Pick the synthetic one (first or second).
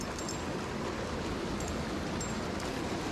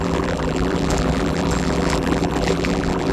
second